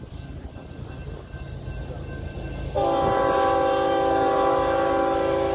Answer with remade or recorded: recorded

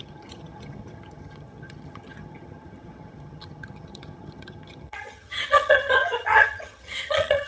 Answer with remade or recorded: remade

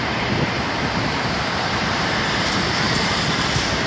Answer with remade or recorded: remade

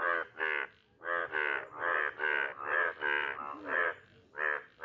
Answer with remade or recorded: recorded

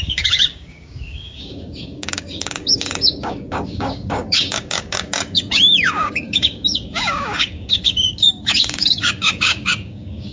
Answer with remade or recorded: remade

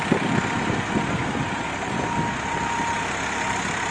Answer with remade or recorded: recorded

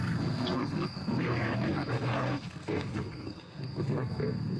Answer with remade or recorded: remade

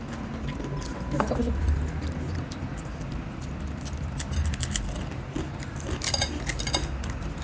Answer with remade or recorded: recorded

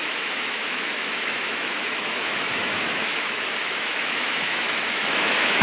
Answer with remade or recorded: remade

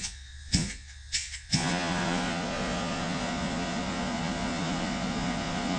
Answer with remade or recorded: remade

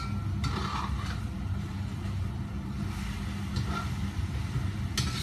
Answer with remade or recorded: recorded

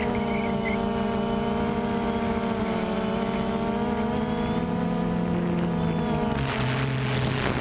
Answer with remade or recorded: recorded